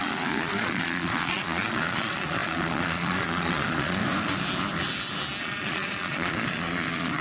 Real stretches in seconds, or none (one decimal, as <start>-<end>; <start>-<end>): 4.0-5.4